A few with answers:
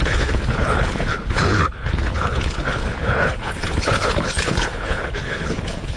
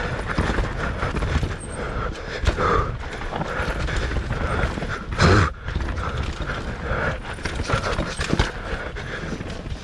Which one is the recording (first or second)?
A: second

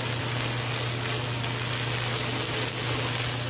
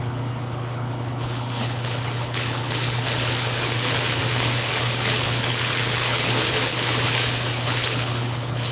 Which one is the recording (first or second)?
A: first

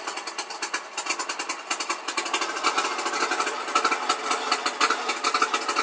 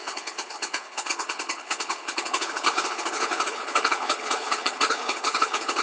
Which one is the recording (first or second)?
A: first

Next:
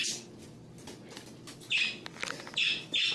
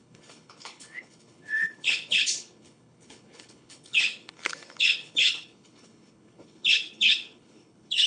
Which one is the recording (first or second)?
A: first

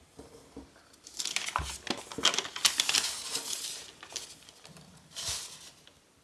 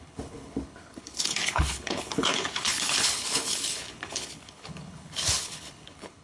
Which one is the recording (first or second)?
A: first